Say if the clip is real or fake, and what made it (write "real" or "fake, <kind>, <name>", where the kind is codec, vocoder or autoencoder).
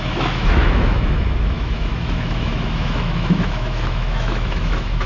fake, autoencoder, DAC-VAE